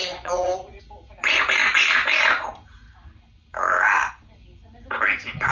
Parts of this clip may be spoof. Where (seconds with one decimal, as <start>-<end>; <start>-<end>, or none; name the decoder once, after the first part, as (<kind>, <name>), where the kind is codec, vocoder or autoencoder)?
0.0-0.8 (vocoder, Vocos)